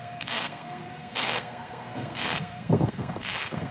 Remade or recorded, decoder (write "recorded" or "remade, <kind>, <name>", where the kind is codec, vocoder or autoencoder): remade, codec, SNAC